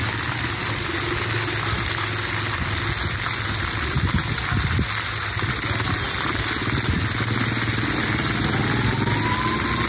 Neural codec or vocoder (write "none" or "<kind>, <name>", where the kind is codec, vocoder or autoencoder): none